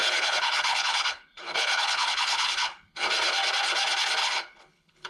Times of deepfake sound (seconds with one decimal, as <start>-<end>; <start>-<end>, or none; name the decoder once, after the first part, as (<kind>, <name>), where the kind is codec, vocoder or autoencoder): 0.0-3.1 (codec, HILCodec); 4.2-5.1

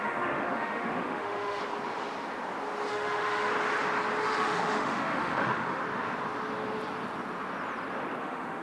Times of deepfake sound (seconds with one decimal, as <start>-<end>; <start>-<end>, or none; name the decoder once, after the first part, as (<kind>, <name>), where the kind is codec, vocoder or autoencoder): 0.0-1.6 (autoencoder, DAC-VAE); 2.9-3.5; 4.2-5.8; 8.2-8.6

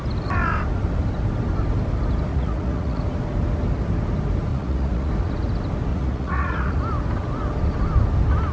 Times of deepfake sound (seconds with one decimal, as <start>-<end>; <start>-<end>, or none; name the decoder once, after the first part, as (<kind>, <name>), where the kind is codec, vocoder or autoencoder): 2.3-3.0 (vocoder, Vocos); 4.5-5.1; 5.9-6.8